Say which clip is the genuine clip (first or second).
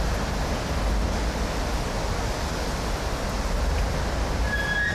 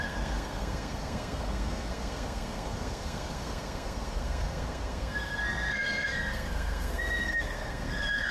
first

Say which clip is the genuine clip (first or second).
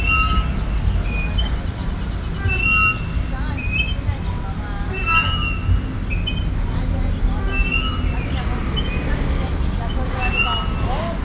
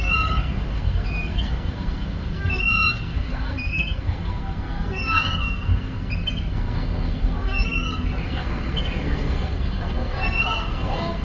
first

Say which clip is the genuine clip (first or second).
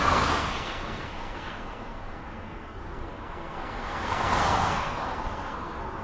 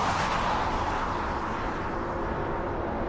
second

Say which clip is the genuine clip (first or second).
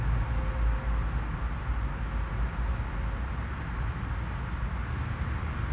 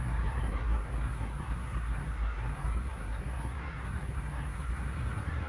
first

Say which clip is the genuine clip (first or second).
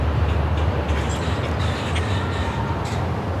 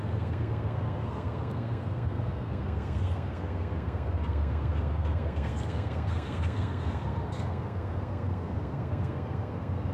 first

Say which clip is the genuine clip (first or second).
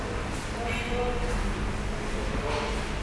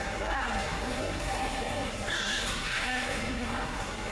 first